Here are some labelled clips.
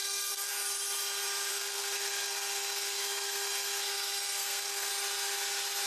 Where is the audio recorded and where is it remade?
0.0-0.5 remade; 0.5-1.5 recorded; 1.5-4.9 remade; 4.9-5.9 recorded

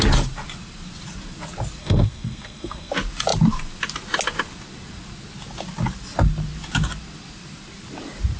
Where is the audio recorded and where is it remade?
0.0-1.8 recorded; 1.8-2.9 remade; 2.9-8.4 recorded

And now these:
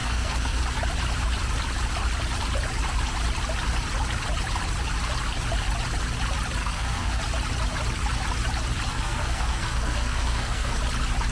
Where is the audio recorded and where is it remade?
0.0-0.6 remade; 0.6-6.6 recorded; 6.6-7.2 remade; 7.2-8.9 recorded; 8.9-10.8 remade; 10.8-11.3 recorded

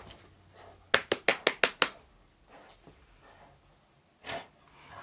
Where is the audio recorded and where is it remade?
0.0-5.0 recorded